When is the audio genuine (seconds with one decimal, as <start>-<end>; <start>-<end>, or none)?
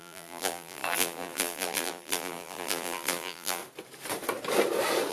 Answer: 3.6-5.1